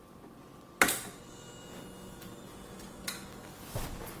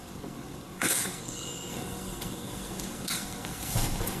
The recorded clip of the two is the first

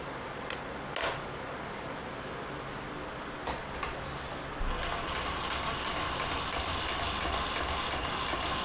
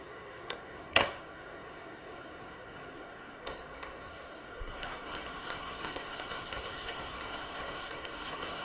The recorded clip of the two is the first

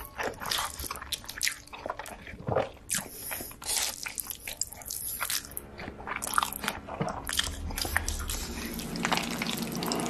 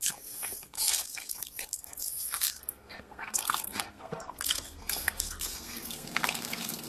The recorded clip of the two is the first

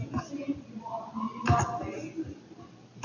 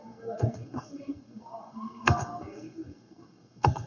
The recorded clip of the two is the first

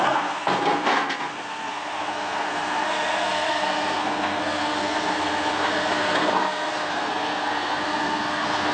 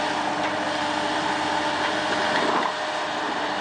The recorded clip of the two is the second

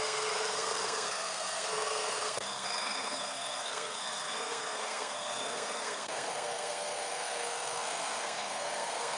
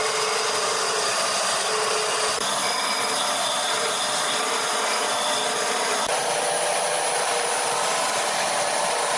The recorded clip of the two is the second